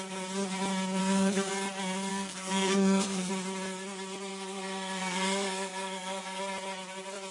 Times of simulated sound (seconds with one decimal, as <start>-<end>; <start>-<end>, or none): 1.0-1.5; 2.1-3.3; 4.3-6.4

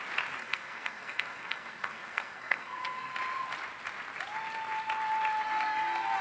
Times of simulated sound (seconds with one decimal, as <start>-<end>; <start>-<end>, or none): 0.4-3.1

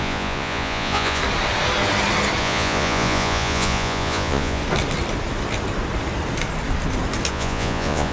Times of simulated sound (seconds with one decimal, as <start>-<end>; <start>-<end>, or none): 0.0-1.2; 2.4-4.6; 7.3-8.1

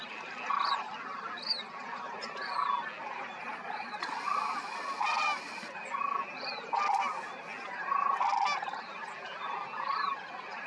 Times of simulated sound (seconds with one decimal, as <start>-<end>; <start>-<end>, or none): 3.4-4.2

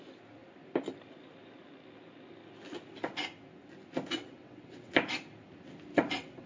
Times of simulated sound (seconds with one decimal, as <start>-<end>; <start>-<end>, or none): 4.2-4.9; 5.9-6.5

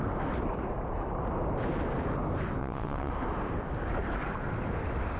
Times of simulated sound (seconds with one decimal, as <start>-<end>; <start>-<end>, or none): 2.6-3.1

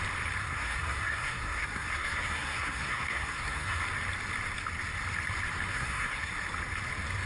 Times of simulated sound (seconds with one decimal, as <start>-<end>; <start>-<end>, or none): 0.4-3.8; 5.7-6.3